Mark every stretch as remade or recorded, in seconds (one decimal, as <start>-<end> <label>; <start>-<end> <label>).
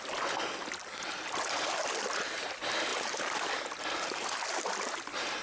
0.0-2.9 recorded; 2.9-3.6 remade; 3.6-5.4 recorded